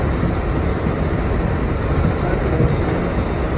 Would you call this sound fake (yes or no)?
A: no